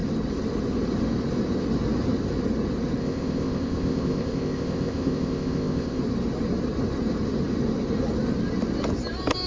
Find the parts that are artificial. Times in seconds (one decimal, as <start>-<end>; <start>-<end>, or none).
3.0-6.0